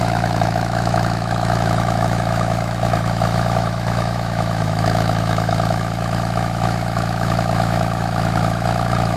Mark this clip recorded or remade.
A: remade